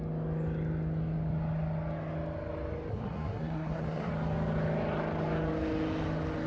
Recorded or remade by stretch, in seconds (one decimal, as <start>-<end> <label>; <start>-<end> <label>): 0.0-2.9 recorded; 2.9-4.1 remade; 4.1-6.5 recorded